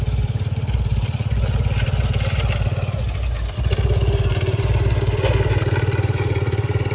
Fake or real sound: real